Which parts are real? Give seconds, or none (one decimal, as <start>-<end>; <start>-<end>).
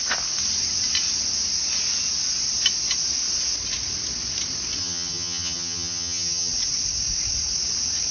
0.0-4.8; 6.5-8.1